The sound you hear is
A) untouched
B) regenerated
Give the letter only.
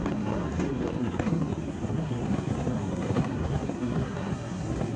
B